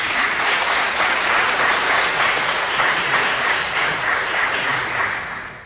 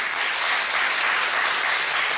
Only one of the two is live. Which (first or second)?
second